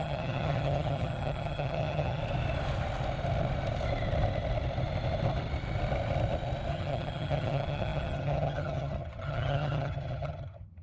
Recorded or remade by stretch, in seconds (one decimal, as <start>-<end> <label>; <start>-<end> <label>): 0.0-2.2 remade; 2.2-6.7 recorded; 6.7-10.8 remade